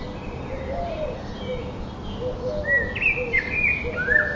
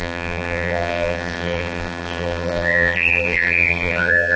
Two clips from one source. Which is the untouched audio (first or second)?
first